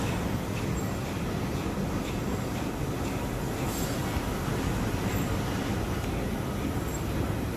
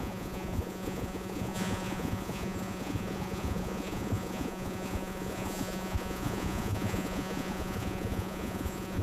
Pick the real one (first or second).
first